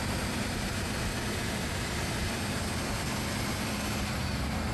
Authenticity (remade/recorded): recorded